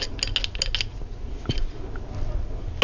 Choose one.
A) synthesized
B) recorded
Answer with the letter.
B